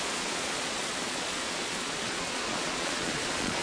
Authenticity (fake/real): fake